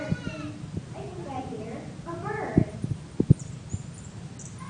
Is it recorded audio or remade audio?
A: recorded